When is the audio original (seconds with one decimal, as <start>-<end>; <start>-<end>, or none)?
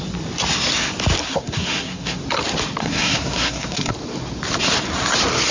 0.0-1.2; 2.2-2.8; 3.9-5.5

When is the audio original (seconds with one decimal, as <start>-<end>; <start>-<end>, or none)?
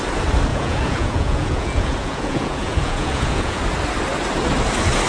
0.0-0.5; 3.6-5.1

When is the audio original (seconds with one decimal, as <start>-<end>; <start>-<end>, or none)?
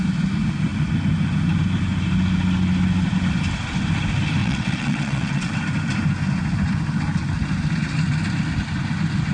0.0-4.4; 5.5-9.3